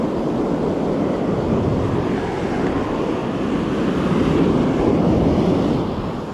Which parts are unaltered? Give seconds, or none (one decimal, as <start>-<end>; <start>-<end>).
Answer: 0.0-6.3